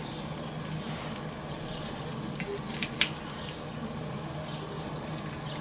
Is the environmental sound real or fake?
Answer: real